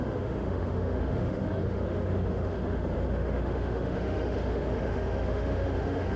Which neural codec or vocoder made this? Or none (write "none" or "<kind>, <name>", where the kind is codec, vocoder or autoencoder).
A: autoencoder, DAC-VAE